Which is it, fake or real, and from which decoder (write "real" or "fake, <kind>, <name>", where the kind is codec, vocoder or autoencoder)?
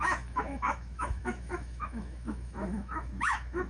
fake, autoencoder, DAC-VAE